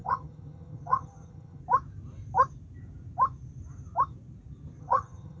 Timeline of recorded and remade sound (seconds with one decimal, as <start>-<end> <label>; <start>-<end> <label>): 0.0-1.6 remade; 1.6-4.8 recorded; 4.8-5.4 remade